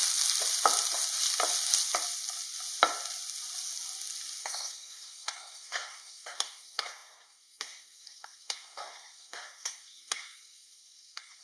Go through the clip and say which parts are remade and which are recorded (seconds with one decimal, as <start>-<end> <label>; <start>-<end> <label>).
0.0-4.4 recorded; 4.4-11.4 remade